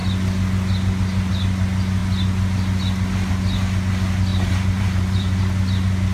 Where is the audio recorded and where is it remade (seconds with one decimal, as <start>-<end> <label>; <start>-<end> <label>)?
0.0-4.3 recorded; 4.3-5.4 remade; 5.4-6.1 recorded